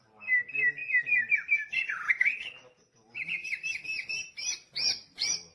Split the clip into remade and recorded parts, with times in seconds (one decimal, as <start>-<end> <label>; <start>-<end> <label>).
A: 0.0-0.8 remade; 0.8-4.1 recorded; 4.1-5.5 remade